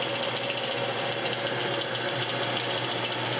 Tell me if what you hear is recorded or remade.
recorded